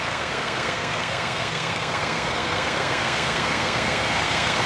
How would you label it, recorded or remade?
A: remade